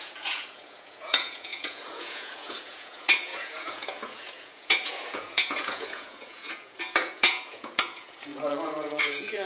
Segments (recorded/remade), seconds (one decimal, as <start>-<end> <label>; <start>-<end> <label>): 0.0-9.5 remade